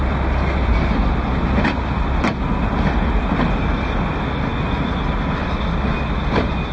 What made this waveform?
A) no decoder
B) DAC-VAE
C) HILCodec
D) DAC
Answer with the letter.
A